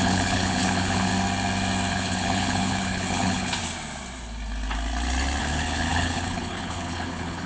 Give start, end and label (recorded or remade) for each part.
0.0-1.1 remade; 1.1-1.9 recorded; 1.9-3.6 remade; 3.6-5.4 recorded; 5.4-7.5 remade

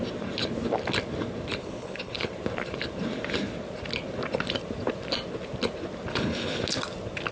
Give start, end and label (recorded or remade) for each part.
0.0-1.6 recorded; 1.6-2.3 remade; 2.3-6.1 recorded; 6.1-6.6 remade; 6.6-7.3 recorded